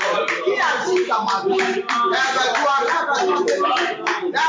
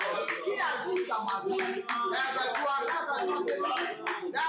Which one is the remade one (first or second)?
first